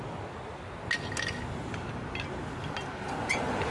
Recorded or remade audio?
recorded